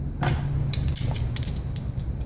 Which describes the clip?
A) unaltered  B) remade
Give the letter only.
A